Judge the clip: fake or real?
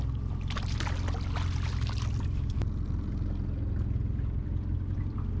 real